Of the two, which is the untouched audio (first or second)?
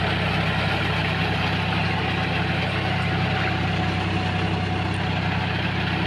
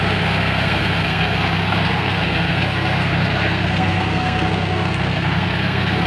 first